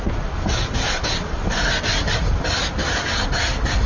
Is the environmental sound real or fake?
real